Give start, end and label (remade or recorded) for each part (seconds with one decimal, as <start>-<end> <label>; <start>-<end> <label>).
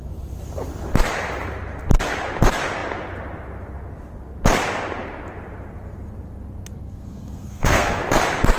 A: 0.0-6.8 recorded; 6.8-8.0 remade; 8.0-8.6 recorded